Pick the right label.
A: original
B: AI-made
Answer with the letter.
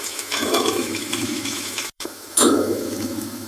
B